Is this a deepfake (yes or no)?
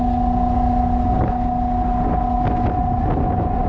no